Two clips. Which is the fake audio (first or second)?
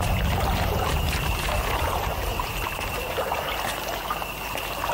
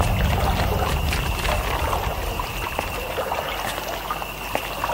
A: first